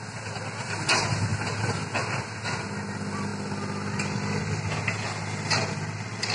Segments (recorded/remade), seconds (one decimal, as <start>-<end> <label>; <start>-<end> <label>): 0.0-6.3 recorded

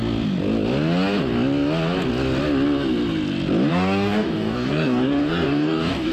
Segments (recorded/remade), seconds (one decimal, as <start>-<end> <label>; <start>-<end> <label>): 0.0-3.7 recorded; 3.7-6.1 remade